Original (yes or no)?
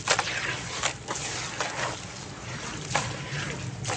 yes